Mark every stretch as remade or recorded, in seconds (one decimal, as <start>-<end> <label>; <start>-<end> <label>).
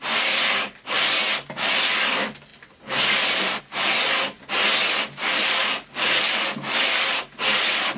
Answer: 0.0-8.0 recorded